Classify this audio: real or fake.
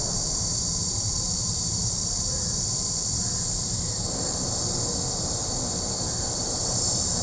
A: fake